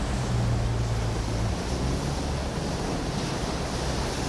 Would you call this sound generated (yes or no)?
no